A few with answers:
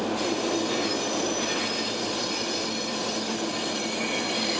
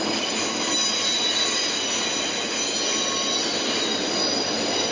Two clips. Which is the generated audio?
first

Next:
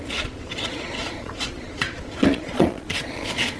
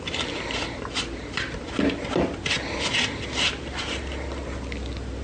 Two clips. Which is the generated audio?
first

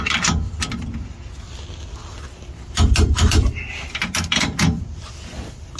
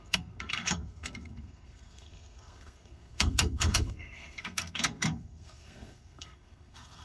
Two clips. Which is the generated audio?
second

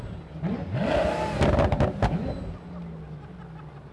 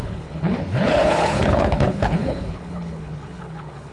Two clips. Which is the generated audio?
second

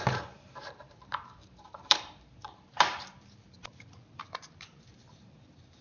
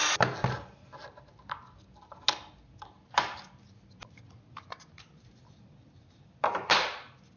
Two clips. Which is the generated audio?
first